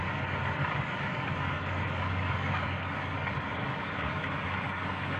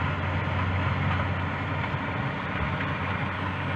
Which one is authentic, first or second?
second